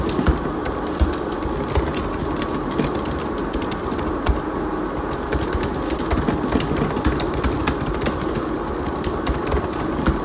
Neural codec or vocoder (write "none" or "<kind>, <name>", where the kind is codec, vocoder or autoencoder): none